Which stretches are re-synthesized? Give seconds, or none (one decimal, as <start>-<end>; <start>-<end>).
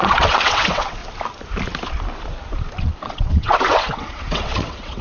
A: 0.0-1.0; 2.8-5.0